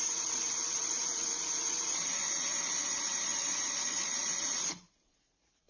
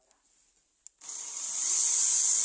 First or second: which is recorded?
second